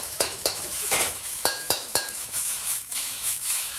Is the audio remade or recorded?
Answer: remade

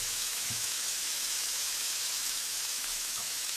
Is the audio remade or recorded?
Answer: remade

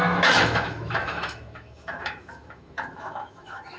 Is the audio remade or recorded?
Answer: remade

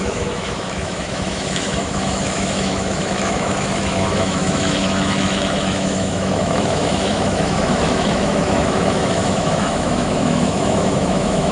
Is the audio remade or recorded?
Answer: remade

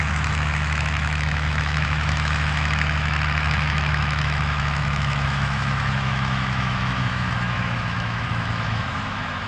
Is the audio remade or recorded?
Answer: remade